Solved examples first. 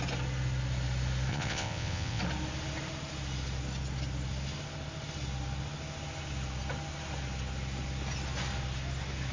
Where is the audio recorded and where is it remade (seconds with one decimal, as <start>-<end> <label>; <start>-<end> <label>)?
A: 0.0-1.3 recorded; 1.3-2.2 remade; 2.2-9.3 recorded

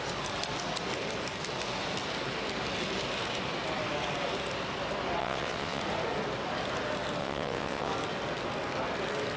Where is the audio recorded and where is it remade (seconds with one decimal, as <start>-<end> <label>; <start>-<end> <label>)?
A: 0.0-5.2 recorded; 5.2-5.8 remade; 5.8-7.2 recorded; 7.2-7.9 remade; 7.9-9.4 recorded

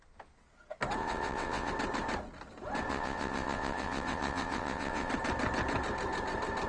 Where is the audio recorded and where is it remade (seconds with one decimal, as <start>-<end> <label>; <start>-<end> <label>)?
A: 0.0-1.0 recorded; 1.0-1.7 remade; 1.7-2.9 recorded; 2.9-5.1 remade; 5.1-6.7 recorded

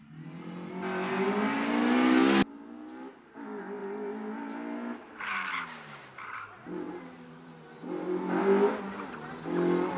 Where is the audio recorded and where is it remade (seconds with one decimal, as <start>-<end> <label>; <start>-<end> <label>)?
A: 0.0-10.0 recorded

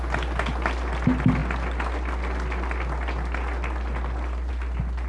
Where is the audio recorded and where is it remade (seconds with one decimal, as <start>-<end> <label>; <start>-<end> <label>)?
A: 0.0-5.1 recorded

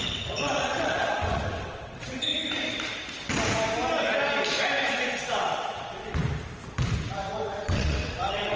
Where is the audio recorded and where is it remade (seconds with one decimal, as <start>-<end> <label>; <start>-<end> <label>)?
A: 0.0-2.3 remade; 2.3-5.2 recorded; 5.2-6.0 remade; 6.0-7.0 recorded; 7.0-8.6 remade

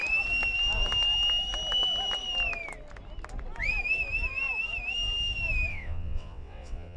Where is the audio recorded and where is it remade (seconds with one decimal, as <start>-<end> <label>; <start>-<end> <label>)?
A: 0.0-5.7 recorded; 5.7-7.0 remade